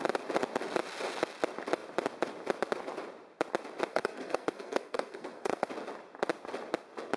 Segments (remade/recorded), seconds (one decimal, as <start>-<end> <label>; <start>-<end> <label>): 0.0-3.9 recorded; 3.9-5.7 remade; 5.7-7.2 recorded